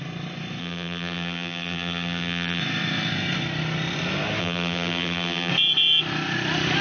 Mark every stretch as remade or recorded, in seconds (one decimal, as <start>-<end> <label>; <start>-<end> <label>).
0.0-0.6 recorded; 0.6-2.6 remade; 2.6-4.4 recorded; 4.4-5.5 remade; 5.5-6.8 recorded